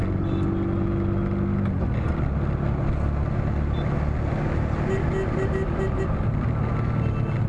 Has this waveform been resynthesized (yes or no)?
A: no